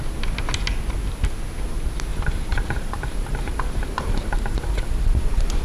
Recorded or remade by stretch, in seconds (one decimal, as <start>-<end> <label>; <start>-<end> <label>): 0.0-2.1 recorded; 2.1-5.6 remade